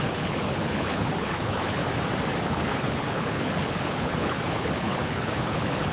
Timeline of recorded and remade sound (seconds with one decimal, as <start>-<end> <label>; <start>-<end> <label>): 0.0-1.8 remade; 1.8-2.4 recorded; 2.4-5.9 remade